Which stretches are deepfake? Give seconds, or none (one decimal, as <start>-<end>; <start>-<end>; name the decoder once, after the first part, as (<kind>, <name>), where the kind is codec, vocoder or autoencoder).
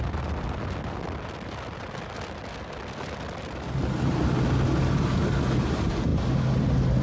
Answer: none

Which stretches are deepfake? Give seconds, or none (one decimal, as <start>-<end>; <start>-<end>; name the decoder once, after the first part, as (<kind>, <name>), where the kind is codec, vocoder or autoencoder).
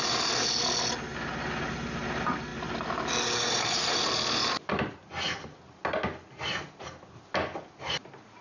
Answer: none